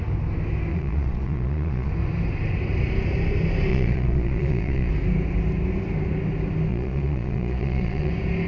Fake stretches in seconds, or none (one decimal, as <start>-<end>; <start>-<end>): 0.7-1.9; 3.7-4.9; 6.7-8.1